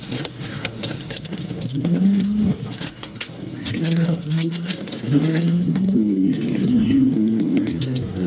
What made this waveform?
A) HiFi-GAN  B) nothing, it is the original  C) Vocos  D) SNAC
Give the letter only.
D